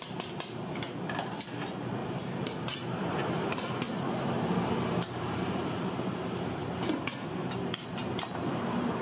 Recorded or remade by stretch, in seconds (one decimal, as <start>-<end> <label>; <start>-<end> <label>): 0.0-2.0 recorded; 2.0-6.9 remade; 6.9-8.0 recorded; 8.0-9.0 remade